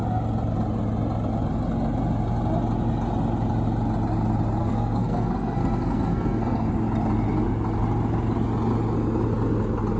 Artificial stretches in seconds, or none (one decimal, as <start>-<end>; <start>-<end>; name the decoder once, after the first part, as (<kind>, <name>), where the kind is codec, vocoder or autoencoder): 4.6-6.7 (codec, SNAC)